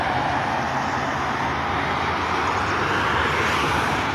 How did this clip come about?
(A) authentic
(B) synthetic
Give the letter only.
A